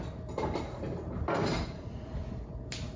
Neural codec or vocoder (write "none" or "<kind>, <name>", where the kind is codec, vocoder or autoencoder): none